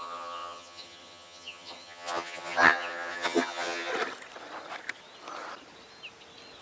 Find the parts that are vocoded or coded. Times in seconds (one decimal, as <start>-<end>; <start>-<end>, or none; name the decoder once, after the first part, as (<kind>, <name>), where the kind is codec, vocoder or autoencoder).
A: 0.0-3.9 (vocoder, HiFi-GAN)